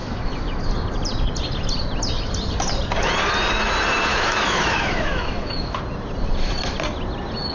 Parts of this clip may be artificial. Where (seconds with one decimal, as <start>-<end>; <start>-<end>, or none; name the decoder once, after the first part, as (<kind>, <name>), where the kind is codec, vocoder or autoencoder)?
0.0-0.6 (autoencoder, DAC-VAE); 4.1-5.8